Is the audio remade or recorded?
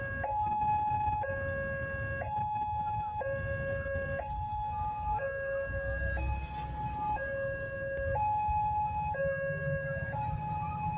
recorded